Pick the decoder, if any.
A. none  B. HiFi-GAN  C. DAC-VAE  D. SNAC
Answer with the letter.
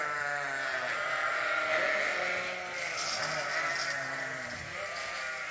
A